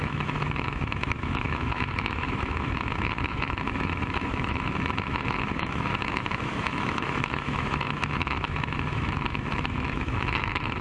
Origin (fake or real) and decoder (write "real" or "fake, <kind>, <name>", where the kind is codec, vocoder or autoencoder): fake, autoencoder, DAC-VAE